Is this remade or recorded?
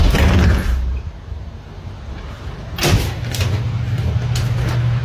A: recorded